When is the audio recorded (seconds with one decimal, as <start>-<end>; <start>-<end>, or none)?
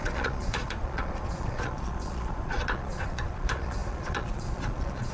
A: none